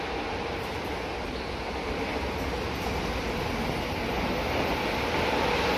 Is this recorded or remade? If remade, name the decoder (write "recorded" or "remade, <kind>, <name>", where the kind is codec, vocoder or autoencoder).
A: recorded